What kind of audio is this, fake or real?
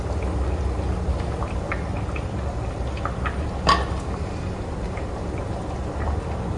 real